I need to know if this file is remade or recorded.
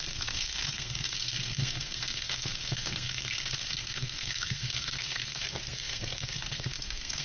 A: remade